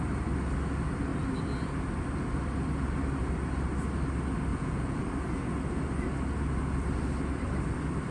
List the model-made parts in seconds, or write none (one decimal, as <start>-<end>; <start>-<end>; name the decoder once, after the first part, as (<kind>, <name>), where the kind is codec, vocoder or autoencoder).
4.5-5.0 (vocoder, Vocos)